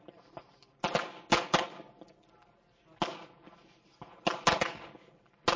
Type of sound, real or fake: real